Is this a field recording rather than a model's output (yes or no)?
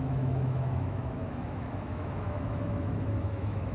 no